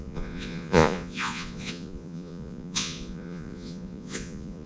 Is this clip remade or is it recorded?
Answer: remade